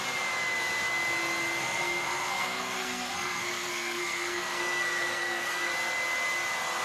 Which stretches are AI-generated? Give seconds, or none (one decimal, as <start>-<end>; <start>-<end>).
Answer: 1.6-5.7